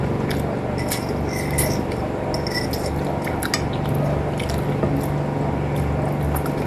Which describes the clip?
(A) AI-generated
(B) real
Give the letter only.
B